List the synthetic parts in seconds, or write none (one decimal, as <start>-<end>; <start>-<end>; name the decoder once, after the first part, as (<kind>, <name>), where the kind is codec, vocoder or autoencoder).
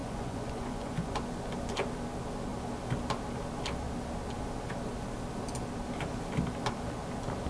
0.0-1.2 (vocoder, Vocos)